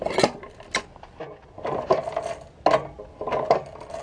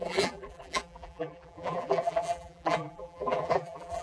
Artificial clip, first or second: second